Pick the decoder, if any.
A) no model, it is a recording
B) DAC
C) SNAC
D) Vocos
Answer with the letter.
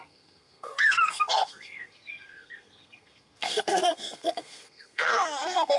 C